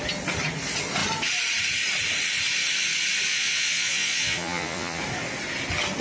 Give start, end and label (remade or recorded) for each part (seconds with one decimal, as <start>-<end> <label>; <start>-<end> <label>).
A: 0.0-3.3 recorded; 3.3-5.0 remade; 5.0-6.0 recorded

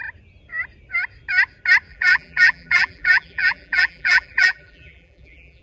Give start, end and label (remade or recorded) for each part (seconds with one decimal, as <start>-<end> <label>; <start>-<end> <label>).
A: 0.0-1.9 recorded; 1.9-5.6 remade

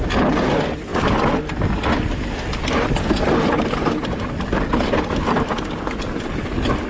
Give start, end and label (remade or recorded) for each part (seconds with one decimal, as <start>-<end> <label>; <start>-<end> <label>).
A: 0.0-6.9 recorded

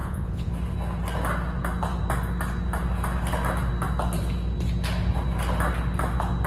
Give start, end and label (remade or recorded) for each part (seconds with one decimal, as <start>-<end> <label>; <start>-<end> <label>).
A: 0.0-0.5 remade; 0.5-6.5 recorded

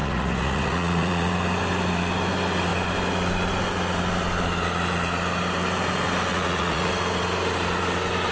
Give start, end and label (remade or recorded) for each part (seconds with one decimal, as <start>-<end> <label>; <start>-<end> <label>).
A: 0.0-1.3 remade; 1.3-6.3 recorded; 6.3-6.9 remade; 6.9-8.3 recorded

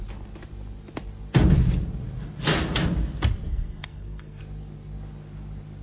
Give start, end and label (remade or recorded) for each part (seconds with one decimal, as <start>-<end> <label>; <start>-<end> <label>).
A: 0.0-3.5 recorded; 3.5-4.4 remade; 4.4-5.8 recorded

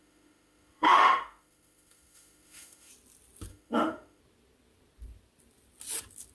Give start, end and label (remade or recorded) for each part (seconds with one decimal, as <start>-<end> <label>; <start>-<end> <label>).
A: 0.0-2.9 remade; 2.9-3.5 recorded; 3.5-4.2 remade; 4.2-6.3 recorded